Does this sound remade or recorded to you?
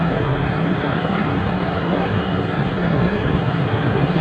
remade